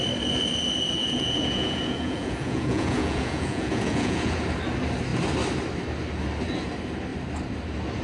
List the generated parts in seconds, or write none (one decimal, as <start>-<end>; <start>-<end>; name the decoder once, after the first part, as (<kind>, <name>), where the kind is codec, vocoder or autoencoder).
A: 1.0-4.4 (vocoder, Vocos)